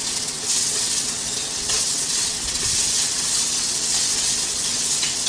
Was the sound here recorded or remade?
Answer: remade